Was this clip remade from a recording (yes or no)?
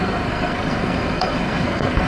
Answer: yes